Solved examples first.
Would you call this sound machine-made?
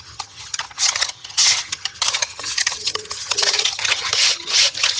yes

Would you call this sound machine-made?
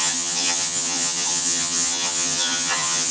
yes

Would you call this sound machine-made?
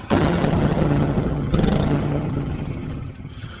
yes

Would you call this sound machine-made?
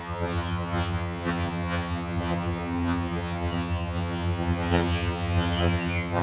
yes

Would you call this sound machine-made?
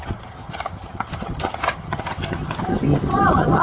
yes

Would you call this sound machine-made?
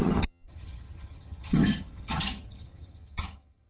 yes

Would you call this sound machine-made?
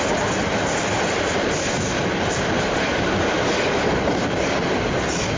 no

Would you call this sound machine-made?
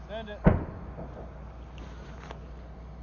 no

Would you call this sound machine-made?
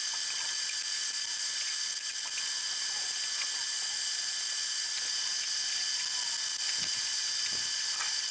no